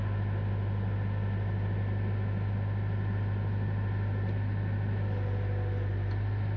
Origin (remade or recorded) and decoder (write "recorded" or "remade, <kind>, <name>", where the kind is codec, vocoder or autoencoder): recorded